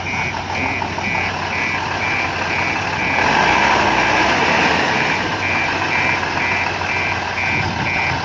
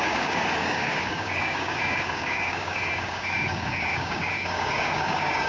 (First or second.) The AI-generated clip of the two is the second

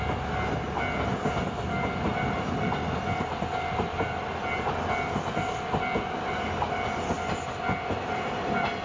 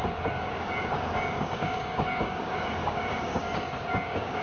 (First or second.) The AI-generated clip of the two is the second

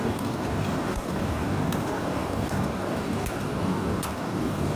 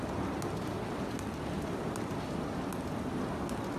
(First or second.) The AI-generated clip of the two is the first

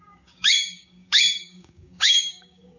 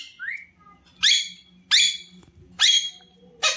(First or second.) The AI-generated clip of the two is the first